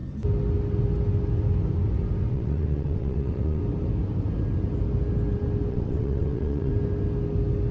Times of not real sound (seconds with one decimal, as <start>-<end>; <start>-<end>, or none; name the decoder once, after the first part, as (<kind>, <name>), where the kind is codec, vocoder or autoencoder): 2.3-3.6 (vocoder, WaveNeXt); 5.7-6.7